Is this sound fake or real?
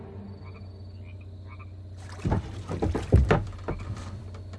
real